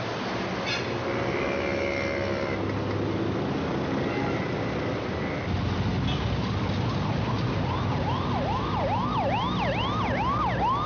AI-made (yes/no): no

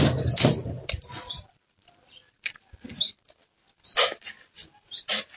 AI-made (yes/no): yes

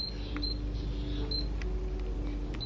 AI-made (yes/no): no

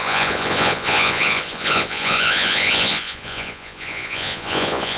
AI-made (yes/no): yes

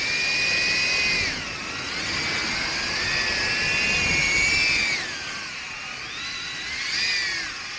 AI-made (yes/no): no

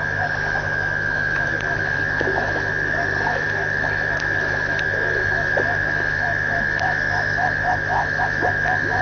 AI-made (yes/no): yes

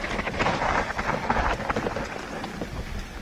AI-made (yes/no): no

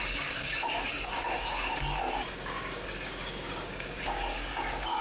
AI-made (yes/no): yes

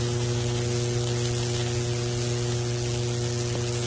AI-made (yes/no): no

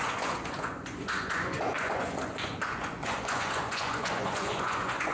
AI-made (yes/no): yes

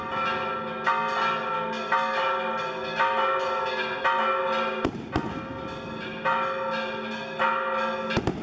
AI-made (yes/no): no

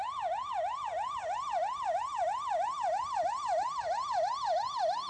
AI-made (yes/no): no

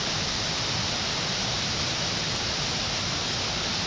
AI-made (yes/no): no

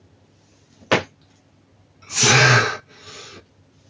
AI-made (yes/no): no